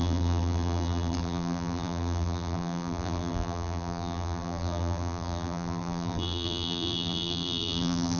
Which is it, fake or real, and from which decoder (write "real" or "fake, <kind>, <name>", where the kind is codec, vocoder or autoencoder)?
fake, vocoder, BigVGAN v2